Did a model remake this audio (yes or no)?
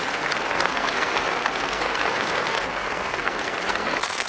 yes